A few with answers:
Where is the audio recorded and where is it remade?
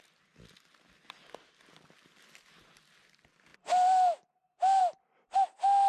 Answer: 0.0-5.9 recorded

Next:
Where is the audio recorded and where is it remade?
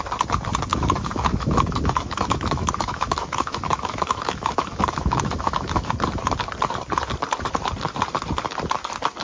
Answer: 0.0-0.7 recorded; 0.7-5.9 remade; 5.9-9.2 recorded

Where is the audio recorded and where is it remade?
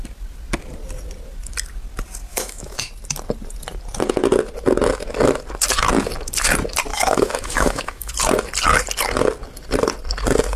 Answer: 0.0-2.3 recorded; 2.3-2.9 remade; 2.9-6.9 recorded; 6.9-8.1 remade; 8.1-10.6 recorded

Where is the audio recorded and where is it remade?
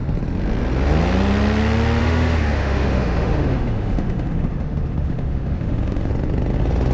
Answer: 0.0-2.0 recorded; 2.0-6.1 remade; 6.1-6.9 recorded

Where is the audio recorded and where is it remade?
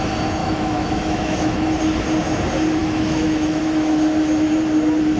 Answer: 0.0-0.4 recorded; 0.4-1.8 remade; 1.8-2.8 recorded; 2.8-3.6 remade; 3.6-5.2 recorded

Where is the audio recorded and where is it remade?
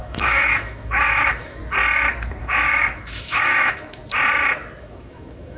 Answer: 0.0-1.6 remade; 1.6-2.4 recorded; 2.4-4.0 remade; 4.0-4.8 recorded; 4.8-5.6 remade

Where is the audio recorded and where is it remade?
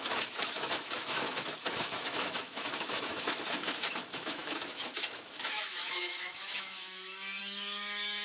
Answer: 0.0-8.2 remade